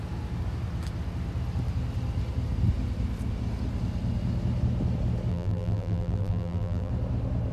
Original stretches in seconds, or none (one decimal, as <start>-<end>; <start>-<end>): 0.0-5.3; 6.9-7.5